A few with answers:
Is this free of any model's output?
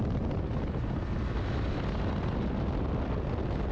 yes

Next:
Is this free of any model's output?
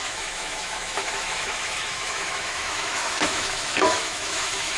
no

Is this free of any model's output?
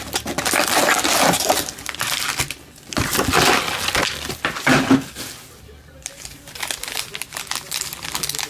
yes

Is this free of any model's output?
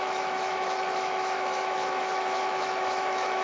no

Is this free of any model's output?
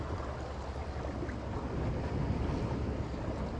yes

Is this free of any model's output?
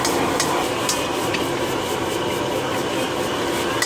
yes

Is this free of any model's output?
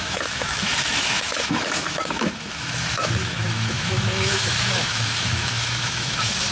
no